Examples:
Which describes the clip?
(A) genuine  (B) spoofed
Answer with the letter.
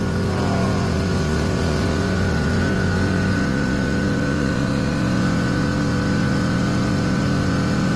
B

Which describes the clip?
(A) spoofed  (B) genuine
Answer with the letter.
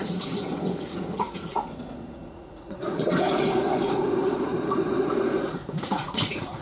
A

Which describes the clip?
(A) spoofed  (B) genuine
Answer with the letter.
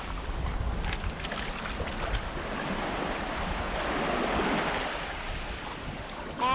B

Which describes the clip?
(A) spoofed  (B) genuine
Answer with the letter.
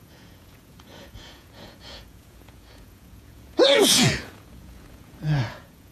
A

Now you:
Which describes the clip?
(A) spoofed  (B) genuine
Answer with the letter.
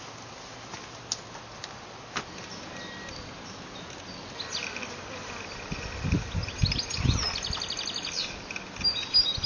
B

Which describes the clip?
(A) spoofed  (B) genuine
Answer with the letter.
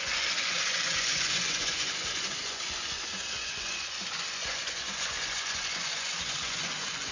A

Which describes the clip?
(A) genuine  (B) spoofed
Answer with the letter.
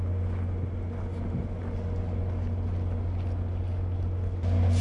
A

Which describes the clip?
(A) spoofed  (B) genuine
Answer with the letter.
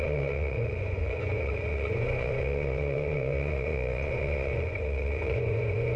A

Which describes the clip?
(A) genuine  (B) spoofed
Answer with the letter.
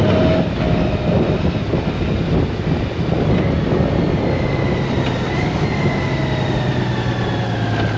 A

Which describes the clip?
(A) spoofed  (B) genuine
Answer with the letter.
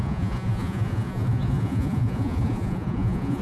A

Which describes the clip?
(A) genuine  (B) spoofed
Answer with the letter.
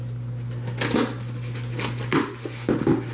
A